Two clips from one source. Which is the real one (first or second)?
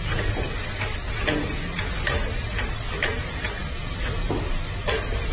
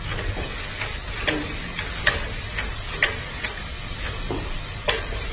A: second